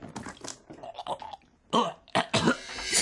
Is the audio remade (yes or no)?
no